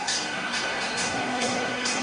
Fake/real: fake